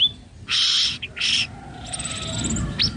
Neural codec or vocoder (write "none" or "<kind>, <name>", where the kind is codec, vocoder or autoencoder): none